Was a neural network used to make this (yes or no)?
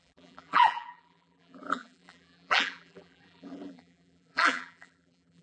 yes